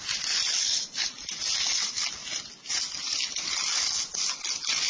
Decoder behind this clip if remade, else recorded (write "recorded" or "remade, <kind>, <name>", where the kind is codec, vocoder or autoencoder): recorded